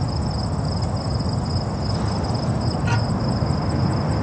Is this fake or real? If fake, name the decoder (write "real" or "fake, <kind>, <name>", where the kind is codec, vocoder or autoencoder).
real